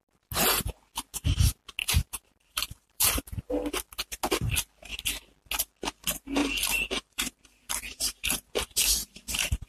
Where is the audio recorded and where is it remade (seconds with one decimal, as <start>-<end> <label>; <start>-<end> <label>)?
0.0-1.8 recorded; 1.8-3.2 remade; 3.2-6.4 recorded; 6.4-9.7 remade